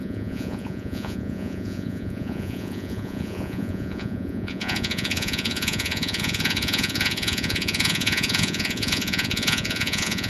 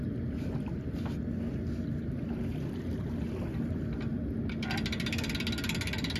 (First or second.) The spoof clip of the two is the first